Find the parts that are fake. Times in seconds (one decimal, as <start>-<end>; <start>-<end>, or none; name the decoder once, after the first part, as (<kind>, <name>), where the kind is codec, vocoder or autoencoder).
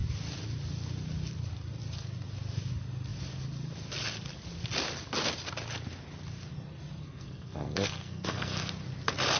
7.0-8.7 (codec, SNAC)